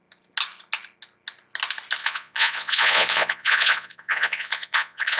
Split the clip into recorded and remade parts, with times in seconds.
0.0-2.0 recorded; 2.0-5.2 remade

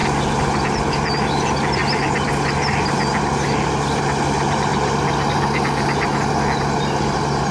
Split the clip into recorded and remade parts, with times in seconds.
0.0-7.5 recorded

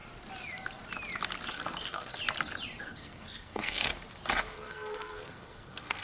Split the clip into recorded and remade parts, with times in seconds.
0.0-1.5 recorded; 1.5-2.2 remade; 2.2-2.8 recorded; 2.8-3.9 remade; 3.9-4.4 recorded; 4.4-6.0 remade

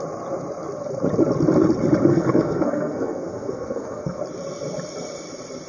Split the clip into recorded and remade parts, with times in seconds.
0.0-2.1 recorded; 2.1-4.2 remade; 4.2-5.7 recorded

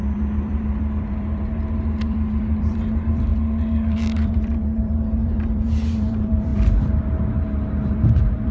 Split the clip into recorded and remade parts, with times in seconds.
0.0-8.5 remade

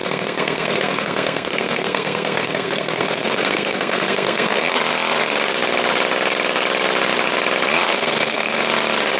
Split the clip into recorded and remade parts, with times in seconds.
0.0-4.7 remade; 4.7-7.9 recorded; 7.9-8.6 remade; 8.6-9.2 recorded

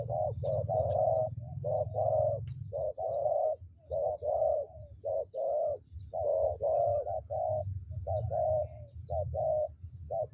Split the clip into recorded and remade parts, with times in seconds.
0.0-6.3 recorded; 6.3-7.6 remade; 7.6-10.3 recorded

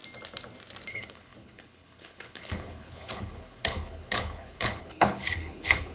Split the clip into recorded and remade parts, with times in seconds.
0.0-0.9 recorded; 0.9-5.9 remade